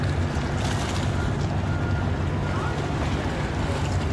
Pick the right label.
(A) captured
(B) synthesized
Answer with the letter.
A